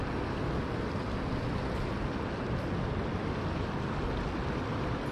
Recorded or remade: recorded